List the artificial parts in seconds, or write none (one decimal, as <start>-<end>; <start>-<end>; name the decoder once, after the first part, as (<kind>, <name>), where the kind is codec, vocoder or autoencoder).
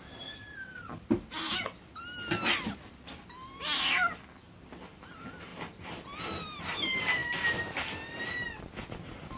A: none